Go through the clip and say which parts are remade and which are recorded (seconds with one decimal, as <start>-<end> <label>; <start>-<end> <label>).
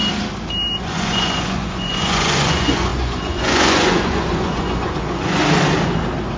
0.0-0.8 recorded; 0.8-5.4 remade; 5.4-6.4 recorded